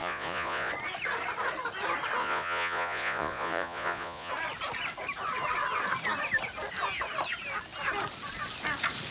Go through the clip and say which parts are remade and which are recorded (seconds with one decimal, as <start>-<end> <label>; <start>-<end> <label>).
0.0-0.7 remade; 0.7-2.2 recorded; 2.2-4.3 remade; 4.3-9.1 recorded

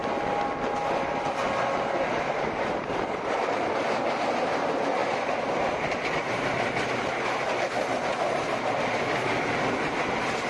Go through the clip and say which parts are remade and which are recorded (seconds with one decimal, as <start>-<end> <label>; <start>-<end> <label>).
0.0-10.5 recorded

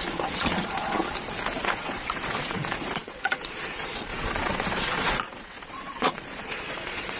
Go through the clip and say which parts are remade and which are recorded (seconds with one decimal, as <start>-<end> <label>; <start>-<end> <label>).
0.0-1.0 remade; 1.0-1.6 recorded; 1.6-7.2 remade

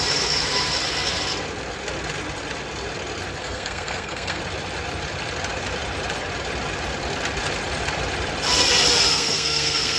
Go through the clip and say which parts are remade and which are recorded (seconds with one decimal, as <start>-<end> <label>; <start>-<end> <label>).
0.0-3.4 recorded; 3.4-4.4 remade; 4.4-9.1 recorded; 9.1-10.0 remade